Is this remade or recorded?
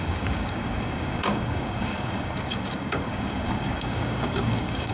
remade